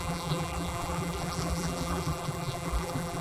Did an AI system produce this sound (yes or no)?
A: yes